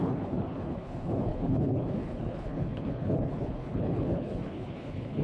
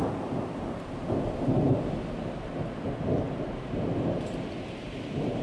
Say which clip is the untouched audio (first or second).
second